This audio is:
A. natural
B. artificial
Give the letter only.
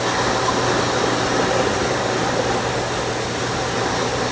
A